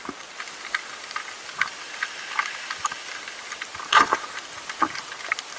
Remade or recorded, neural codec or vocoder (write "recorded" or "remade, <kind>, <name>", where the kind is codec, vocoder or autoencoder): recorded